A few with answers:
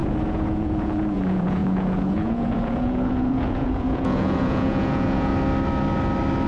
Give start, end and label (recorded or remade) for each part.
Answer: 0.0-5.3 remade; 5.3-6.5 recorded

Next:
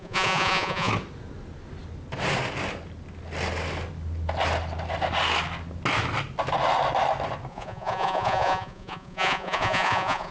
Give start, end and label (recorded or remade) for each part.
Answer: 0.0-0.9 remade; 0.9-7.5 recorded; 7.5-10.3 remade

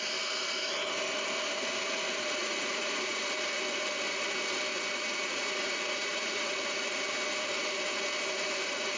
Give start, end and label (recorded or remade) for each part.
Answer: 0.0-2.4 recorded; 2.4-3.2 remade; 3.2-4.7 recorded; 4.7-6.5 remade; 6.5-9.0 recorded

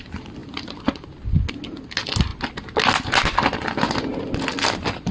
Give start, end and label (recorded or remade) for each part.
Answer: 0.0-5.1 recorded

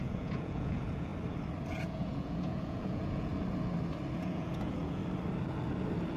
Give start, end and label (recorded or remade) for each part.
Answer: 0.0-1.1 remade; 1.1-1.7 recorded; 1.7-3.3 remade; 3.3-4.2 recorded; 4.2-5.0 remade; 5.0-6.2 recorded

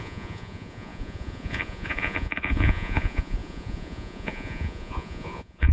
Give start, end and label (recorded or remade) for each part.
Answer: 0.0-5.7 remade